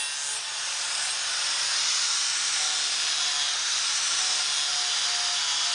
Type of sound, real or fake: real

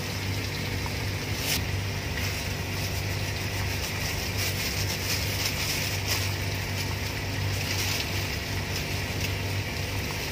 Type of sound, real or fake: real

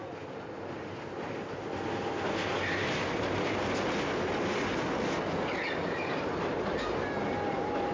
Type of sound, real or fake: real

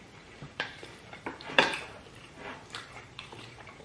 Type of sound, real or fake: fake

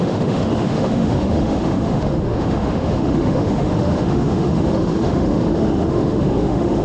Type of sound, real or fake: fake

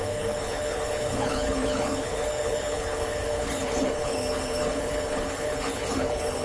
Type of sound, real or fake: fake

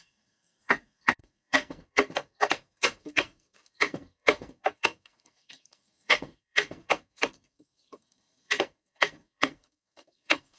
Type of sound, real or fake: fake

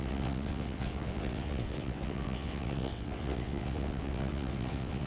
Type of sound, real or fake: fake